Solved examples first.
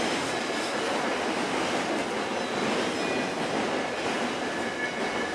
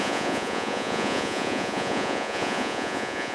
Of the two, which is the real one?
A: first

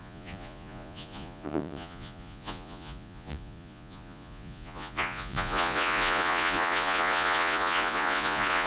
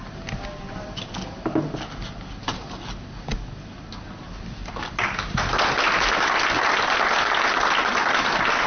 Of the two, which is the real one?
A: second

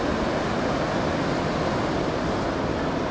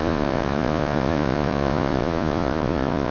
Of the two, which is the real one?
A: first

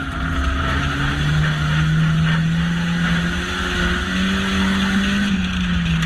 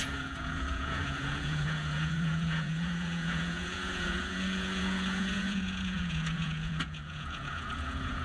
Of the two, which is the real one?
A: first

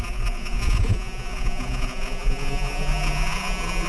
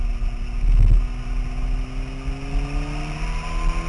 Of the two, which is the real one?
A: second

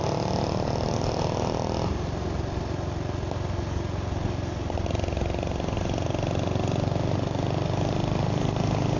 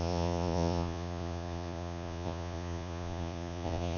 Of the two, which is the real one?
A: first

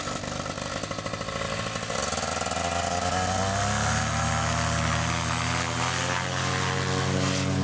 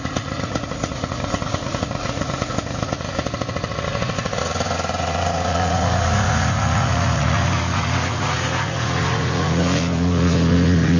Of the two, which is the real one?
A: first